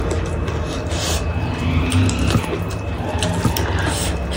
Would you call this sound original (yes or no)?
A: yes